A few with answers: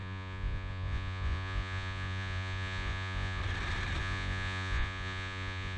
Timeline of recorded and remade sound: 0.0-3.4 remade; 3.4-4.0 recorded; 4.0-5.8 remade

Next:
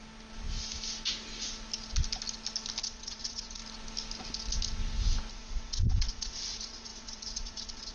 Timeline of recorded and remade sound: 0.0-2.8 recorded; 2.8-3.6 remade; 3.6-5.3 recorded; 5.3-7.9 remade

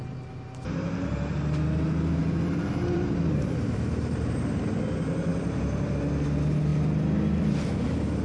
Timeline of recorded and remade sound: 0.0-2.2 recorded; 2.2-4.8 remade; 4.8-8.2 recorded

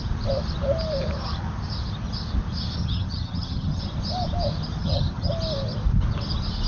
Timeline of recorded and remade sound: 0.0-2.8 recorded; 2.8-3.8 remade; 3.8-4.8 recorded; 4.8-5.3 remade; 5.3-6.7 recorded

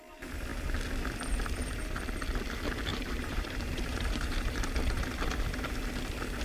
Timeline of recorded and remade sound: 0.0-2.9 recorded; 2.9-5.0 remade; 5.0-6.4 recorded